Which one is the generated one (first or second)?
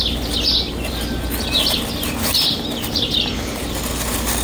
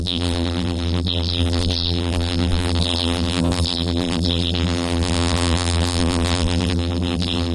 second